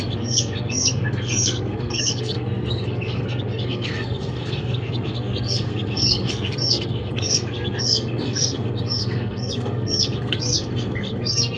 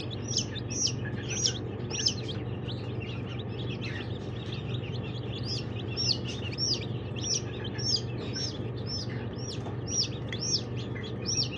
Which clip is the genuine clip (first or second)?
second